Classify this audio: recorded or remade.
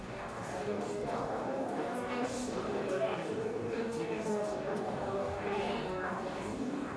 remade